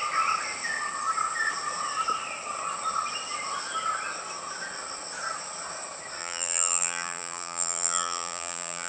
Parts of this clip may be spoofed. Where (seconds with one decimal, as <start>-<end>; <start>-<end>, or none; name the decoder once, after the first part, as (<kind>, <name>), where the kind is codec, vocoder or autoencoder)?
6.2-8.9 (vocoder, BigVGAN v2)